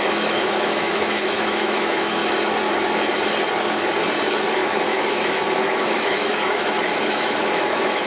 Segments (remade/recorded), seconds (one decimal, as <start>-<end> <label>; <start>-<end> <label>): 0.0-2.2 remade; 2.2-4.5 recorded; 4.5-8.1 remade